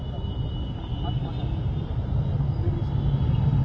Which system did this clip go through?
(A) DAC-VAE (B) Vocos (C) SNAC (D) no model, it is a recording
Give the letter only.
D